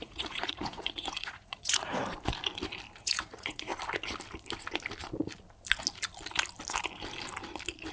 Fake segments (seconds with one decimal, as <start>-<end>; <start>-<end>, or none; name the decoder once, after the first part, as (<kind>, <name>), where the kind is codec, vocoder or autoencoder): 0.0-2.0 (vocoder, Vocos); 3.0-3.7